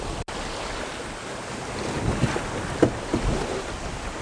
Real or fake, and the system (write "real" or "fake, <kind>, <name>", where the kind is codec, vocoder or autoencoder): real